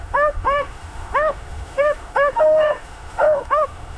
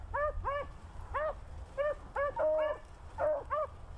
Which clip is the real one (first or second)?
second